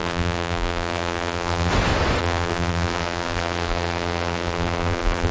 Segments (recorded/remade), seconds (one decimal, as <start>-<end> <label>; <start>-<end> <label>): 0.0-1.7 remade; 1.7-2.2 recorded; 2.2-5.3 remade